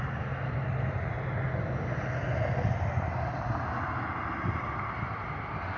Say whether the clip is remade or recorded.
recorded